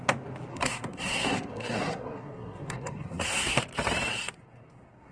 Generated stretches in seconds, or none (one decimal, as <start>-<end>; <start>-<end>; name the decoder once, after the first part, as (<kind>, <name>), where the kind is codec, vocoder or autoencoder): 0.5-3.6 (codec, SNAC); 4.1-5.1